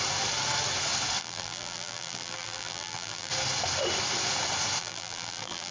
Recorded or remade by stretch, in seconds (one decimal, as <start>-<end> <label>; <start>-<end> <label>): 0.0-1.2 recorded; 1.2-3.3 remade; 3.3-4.8 recorded; 4.8-5.7 remade